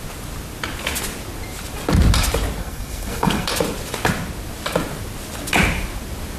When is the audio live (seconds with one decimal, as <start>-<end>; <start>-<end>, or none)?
0.0-2.6; 3.5-6.4